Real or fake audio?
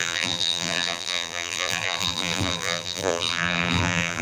fake